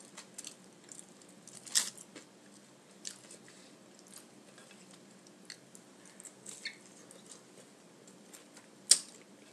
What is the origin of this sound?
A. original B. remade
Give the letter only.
A